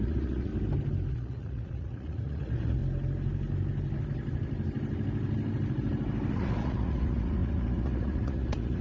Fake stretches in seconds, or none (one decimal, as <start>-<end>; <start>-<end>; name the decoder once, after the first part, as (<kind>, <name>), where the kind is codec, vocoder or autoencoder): 0.0-0.5 (vocoder, Vocos); 1.1-2.8; 6.3-8.8